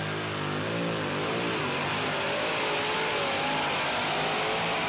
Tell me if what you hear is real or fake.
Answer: real